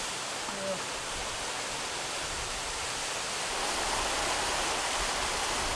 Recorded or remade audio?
recorded